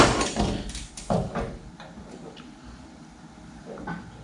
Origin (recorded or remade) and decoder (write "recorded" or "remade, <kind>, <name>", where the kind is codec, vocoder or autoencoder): remade, vocoder, BigVGAN v2